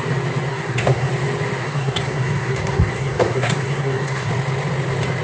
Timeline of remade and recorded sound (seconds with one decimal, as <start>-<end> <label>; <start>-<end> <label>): 0.0-0.5 recorded; 0.5-1.1 remade; 1.1-1.6 recorded; 1.6-4.3 remade; 4.3-5.2 recorded